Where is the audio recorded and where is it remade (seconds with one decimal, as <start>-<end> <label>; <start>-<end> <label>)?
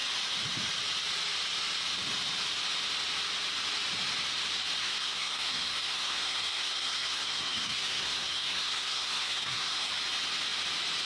0.0-4.8 recorded; 4.8-9.9 remade; 9.9-11.0 recorded